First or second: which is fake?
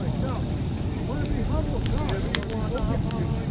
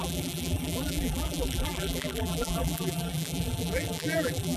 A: second